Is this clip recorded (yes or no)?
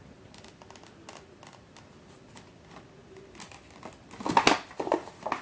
yes